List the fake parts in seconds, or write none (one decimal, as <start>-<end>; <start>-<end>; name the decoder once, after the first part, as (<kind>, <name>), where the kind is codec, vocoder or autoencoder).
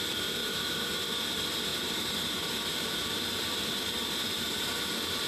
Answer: 0.4-0.9 (vocoder, BigVGAN v2); 1.7-4.6